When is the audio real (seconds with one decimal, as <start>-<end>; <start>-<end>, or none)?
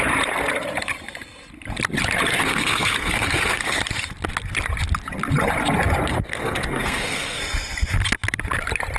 0.0-2.3; 3.8-6.1; 7.4-9.0